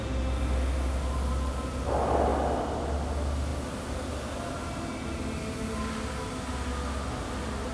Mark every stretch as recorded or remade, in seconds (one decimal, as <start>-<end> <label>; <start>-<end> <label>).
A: 0.0-7.7 recorded